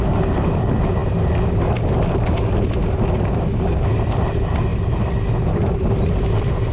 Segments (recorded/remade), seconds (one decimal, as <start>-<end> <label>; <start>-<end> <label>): 0.0-6.7 recorded